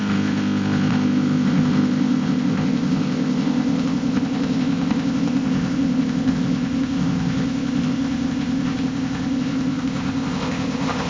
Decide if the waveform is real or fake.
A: fake